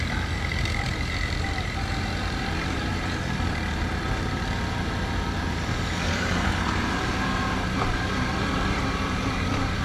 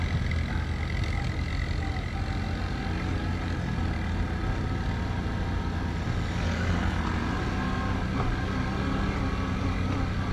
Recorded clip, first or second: second